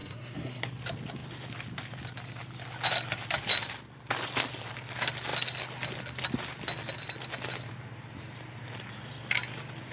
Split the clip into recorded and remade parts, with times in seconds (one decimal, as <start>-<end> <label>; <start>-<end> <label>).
0.0-0.6 remade; 0.6-9.9 recorded